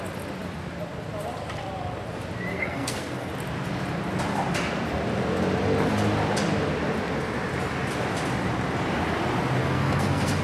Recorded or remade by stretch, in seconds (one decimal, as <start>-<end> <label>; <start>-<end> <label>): 0.0-2.5 recorded; 2.5-3.3 remade; 3.3-9.6 recorded; 9.6-10.4 remade